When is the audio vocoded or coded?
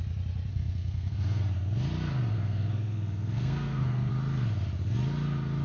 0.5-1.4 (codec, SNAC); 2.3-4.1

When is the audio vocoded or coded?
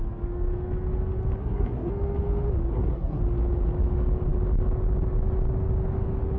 1.4-1.9 (codec, SNAC); 2.7-3.2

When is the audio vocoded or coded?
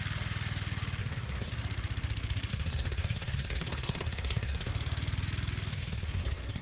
1.0-1.5 (codec, SNAC); 2.5-4.7; 5.7-6.6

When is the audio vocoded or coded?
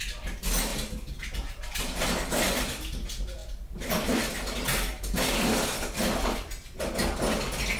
none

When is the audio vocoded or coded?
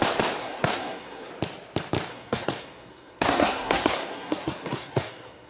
0.4-1.3 (codec, SNAC); 2.1-5.5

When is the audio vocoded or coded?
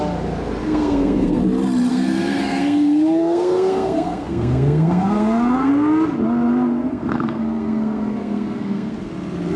0.6-1.4 (codec, SNAC); 1.9-5.7; 6.9-9.1